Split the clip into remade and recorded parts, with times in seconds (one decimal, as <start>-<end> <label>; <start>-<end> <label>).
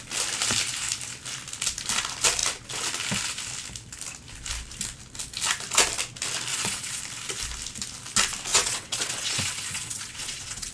0.0-6.5 recorded; 6.5-7.0 remade; 7.0-8.5 recorded; 8.5-10.7 remade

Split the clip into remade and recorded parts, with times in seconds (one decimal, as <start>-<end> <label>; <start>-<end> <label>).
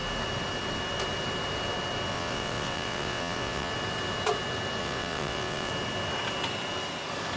0.0-2.1 recorded; 2.1-3.7 remade; 3.7-4.8 recorded; 4.8-5.7 remade; 5.7-7.4 recorded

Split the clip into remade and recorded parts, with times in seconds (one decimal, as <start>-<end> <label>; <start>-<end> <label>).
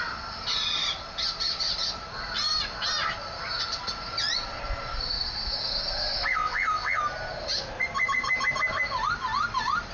0.0-6.3 recorded; 6.3-7.0 remade; 7.0-9.9 recorded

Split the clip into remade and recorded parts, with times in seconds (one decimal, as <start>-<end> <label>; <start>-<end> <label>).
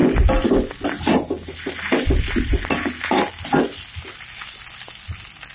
0.0-5.5 recorded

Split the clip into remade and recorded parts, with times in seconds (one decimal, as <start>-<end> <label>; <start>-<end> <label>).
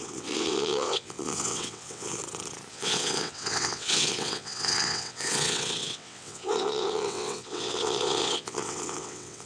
0.0-2.2 remade; 2.2-2.7 recorded; 2.7-9.5 remade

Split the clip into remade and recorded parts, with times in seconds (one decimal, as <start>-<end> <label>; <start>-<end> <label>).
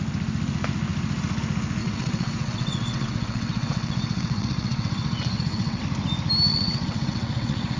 0.0-1.8 recorded; 1.8-5.8 remade; 5.8-6.5 recorded; 6.5-7.8 remade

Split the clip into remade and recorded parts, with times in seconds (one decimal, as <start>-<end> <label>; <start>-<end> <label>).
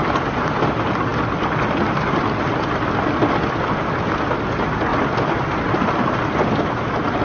0.0-7.2 recorded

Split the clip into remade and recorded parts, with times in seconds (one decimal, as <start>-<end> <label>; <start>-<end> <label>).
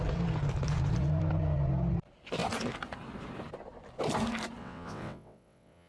0.0-4.6 recorded; 4.6-5.9 remade